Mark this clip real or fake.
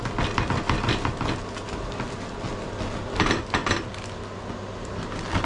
real